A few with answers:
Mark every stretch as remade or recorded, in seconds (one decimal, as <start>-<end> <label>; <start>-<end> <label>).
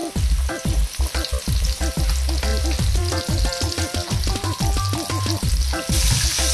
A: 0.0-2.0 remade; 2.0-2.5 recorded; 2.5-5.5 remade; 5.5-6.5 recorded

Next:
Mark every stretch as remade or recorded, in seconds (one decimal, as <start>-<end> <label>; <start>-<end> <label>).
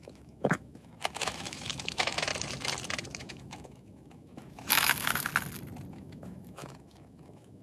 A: 0.0-2.3 remade; 2.3-3.1 recorded; 3.1-5.3 remade; 5.3-5.9 recorded; 5.9-7.6 remade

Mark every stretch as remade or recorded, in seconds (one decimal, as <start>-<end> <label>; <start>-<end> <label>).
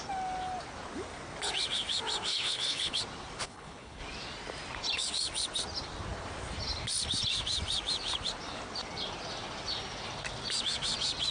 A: 0.0-2.3 recorded; 2.3-3.0 remade; 3.0-3.4 recorded; 3.4-4.0 remade; 4.0-11.3 recorded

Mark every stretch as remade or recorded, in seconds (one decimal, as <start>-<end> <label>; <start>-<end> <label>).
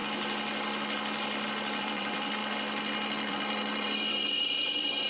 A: 0.0-1.8 recorded; 1.8-2.4 remade; 2.4-3.3 recorded; 3.3-5.1 remade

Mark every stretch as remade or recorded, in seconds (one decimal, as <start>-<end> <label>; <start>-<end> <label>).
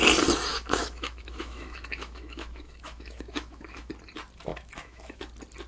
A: 0.0-0.5 recorded; 0.5-3.9 remade; 3.9-4.5 recorded; 4.5-5.2 remade; 5.2-5.7 recorded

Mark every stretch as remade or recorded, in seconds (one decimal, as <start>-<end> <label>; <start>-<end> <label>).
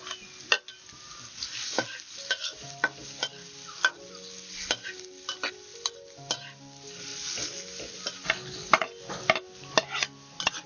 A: 0.0-10.7 recorded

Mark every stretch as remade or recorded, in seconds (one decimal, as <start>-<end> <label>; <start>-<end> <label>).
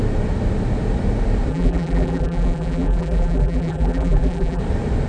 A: 0.0-1.5 recorded; 1.5-4.6 remade; 4.6-5.1 recorded